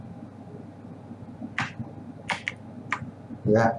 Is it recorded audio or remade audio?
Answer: recorded